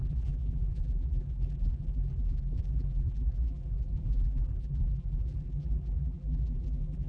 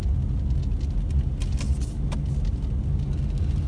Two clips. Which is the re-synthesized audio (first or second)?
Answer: first